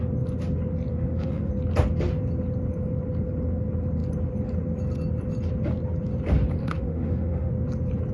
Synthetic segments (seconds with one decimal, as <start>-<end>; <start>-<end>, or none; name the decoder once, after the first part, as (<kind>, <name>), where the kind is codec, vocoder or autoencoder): 0.9-1.5 (autoencoder, DAC-VAE); 6.6-7.5